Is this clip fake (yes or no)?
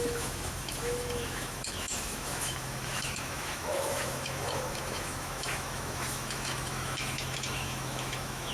yes